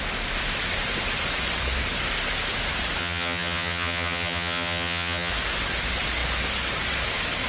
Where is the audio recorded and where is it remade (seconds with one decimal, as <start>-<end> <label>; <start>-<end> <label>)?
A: 0.0-3.0 recorded; 3.0-5.3 remade; 5.3-7.5 recorded